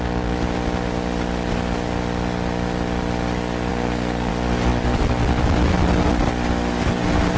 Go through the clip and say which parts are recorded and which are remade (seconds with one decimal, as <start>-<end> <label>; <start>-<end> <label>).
0.0-3.7 recorded; 3.7-4.3 remade; 4.3-7.4 recorded